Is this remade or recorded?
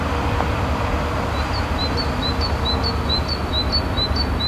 recorded